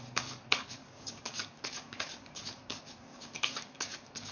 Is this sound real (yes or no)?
no